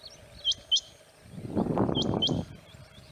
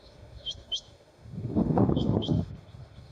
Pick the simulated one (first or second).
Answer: second